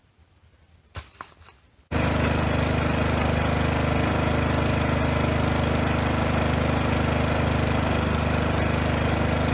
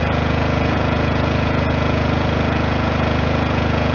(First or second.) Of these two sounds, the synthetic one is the second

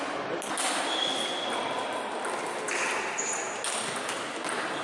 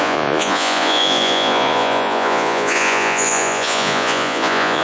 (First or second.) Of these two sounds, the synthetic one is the second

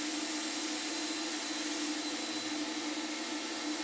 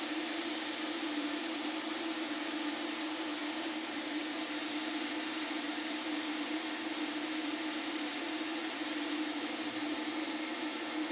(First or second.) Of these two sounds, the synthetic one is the second